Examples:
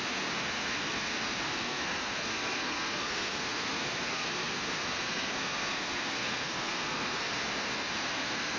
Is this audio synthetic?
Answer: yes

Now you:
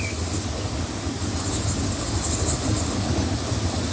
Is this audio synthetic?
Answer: no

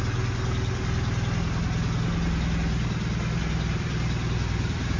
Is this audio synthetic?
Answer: no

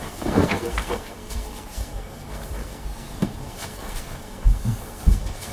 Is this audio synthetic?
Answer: yes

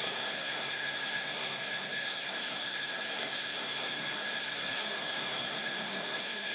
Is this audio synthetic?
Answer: yes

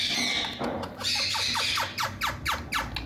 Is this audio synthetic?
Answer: no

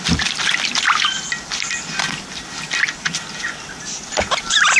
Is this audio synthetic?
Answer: no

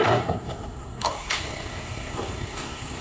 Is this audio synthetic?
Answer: yes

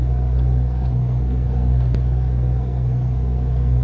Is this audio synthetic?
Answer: yes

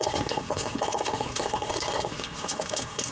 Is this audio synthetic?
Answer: yes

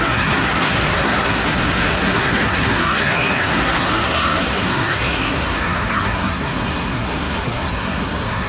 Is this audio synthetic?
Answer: yes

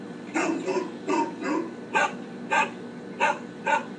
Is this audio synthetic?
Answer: no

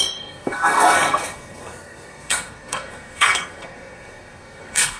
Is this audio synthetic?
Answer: yes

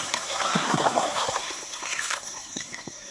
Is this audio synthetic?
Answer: yes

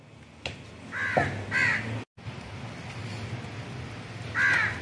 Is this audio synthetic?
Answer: no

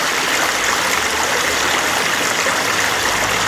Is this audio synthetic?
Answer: no